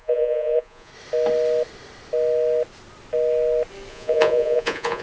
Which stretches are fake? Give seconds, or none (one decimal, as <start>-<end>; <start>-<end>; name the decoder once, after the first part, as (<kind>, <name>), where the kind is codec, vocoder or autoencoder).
0.0-0.9 (vocoder, Vocos); 3.9-5.0